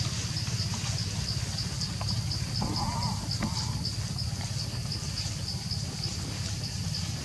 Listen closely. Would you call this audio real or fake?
real